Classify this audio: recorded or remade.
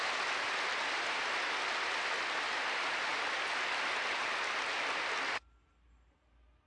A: recorded